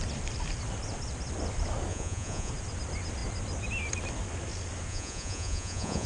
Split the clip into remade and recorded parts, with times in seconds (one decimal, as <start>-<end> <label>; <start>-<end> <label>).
0.0-1.9 recorded; 1.9-2.5 remade; 2.5-4.9 recorded; 4.9-6.1 remade